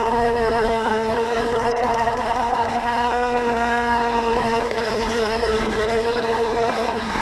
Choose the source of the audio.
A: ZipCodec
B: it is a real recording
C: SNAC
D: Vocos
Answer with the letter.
C